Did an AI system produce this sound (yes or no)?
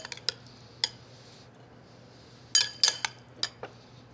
no